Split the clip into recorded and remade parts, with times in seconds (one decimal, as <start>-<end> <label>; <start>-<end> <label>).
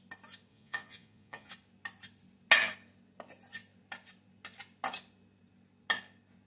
0.0-0.5 recorded; 0.5-1.5 remade; 1.5-6.5 recorded